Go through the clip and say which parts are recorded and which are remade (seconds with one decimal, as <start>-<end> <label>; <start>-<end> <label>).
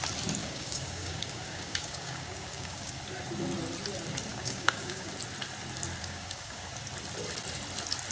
0.0-0.4 recorded; 0.4-3.0 remade; 3.0-4.3 recorded; 4.3-5.1 remade; 5.1-6.0 recorded; 6.0-6.7 remade; 6.7-8.1 recorded